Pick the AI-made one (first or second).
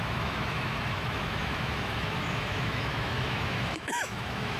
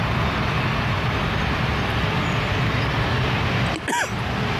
first